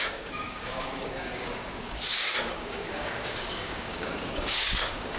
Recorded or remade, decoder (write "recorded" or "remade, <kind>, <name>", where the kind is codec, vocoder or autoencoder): remade, codec, DAC